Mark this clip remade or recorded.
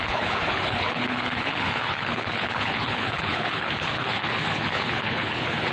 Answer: remade